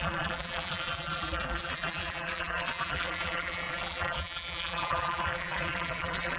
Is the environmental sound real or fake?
fake